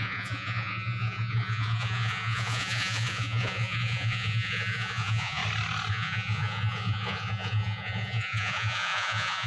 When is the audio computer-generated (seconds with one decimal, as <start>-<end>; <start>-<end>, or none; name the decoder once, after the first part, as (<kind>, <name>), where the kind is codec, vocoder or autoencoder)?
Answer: 0.0-5.4 (vocoder, Vocos); 5.9-9.5